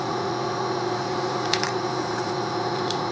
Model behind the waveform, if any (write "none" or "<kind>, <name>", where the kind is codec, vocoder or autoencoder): vocoder, Vocos